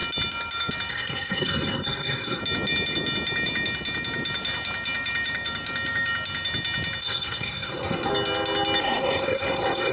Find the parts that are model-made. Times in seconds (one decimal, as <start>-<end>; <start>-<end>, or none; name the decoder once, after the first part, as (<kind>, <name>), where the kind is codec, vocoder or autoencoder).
0.9-2.4 (codec, SNAC); 7.0-8.1; 8.8-9.9